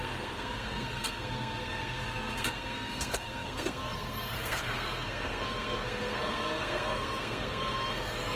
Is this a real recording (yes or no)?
no